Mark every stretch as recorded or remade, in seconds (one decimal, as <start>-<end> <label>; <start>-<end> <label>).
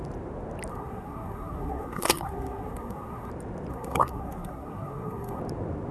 0.0-0.7 recorded; 0.7-3.3 remade; 3.3-3.7 recorded; 3.7-5.4 remade; 5.4-5.9 recorded